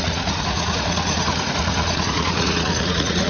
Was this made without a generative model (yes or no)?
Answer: no